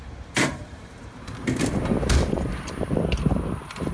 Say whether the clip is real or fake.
fake